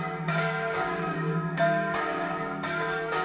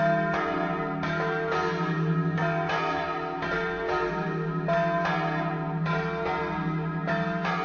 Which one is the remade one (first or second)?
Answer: first